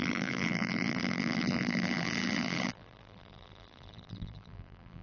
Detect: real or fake fake